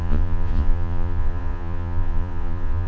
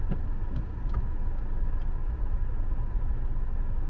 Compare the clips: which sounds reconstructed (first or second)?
first